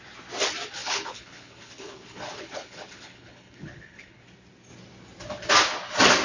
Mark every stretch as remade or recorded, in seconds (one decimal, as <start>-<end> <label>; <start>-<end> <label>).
0.0-0.8 recorded; 0.8-4.2 remade; 4.2-6.2 recorded